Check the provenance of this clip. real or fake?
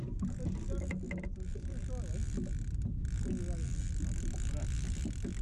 real